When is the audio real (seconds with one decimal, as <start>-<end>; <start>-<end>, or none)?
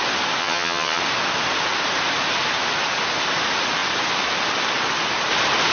0.0-0.4; 1.0-5.7